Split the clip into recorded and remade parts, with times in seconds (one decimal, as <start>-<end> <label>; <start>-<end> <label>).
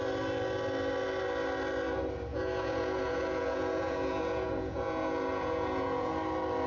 0.0-2.3 recorded; 2.3-6.1 remade; 6.1-6.7 recorded